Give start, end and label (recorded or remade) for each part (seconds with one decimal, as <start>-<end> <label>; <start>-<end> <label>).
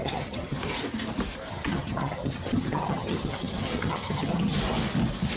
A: 0.0-0.6 remade; 0.6-1.5 recorded; 1.5-4.6 remade; 4.6-5.4 recorded